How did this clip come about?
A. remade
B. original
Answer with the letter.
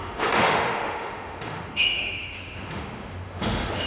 A